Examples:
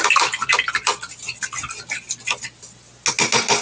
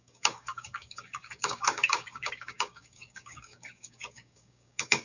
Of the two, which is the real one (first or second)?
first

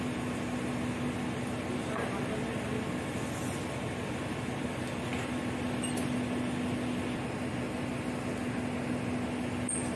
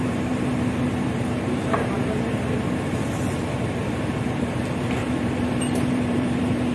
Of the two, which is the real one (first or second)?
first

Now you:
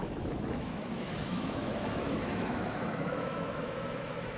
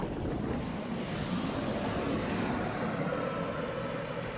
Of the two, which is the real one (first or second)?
second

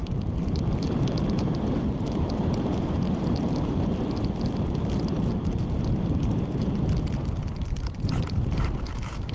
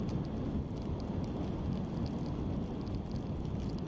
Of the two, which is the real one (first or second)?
second